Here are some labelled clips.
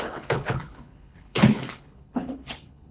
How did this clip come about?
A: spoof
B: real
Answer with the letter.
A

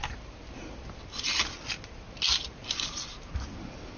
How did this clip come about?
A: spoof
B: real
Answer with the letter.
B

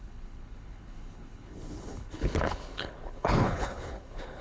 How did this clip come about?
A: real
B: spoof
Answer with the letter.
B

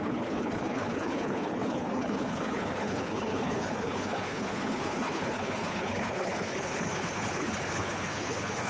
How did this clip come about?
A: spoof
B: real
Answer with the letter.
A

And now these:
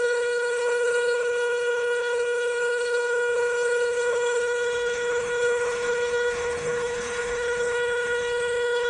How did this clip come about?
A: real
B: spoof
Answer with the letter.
B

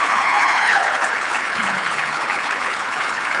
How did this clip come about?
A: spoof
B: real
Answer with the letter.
A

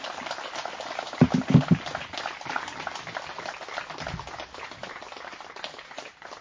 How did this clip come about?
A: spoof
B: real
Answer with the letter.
B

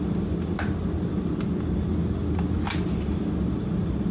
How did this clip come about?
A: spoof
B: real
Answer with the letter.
B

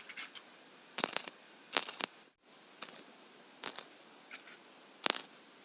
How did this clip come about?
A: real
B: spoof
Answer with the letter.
A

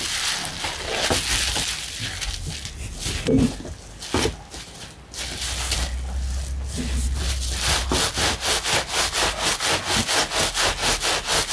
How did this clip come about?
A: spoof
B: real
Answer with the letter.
B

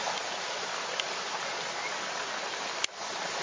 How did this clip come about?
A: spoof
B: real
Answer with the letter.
B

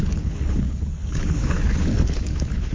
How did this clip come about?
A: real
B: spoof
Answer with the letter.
B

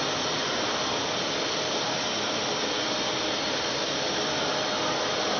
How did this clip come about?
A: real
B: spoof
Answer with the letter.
A